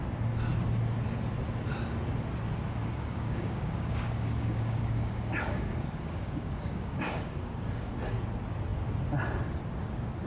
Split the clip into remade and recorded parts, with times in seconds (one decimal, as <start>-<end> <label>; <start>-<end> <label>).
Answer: 0.0-2.8 recorded; 2.8-7.9 remade; 7.9-10.3 recorded